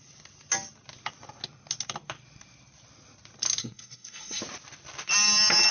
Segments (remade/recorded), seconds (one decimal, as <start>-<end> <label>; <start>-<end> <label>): 0.0-3.6 recorded; 3.6-4.4 remade; 4.4-5.7 recorded